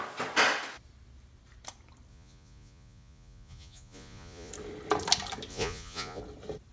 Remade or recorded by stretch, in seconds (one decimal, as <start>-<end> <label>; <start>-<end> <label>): 0.0-2.1 recorded; 2.1-4.5 remade; 4.5-5.5 recorded; 5.5-6.2 remade; 6.2-6.7 recorded